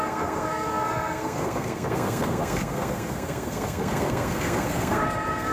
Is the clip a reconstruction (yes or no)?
yes